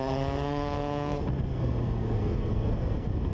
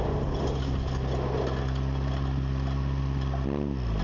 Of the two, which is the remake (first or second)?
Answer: first